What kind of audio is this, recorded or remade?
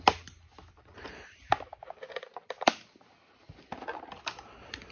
recorded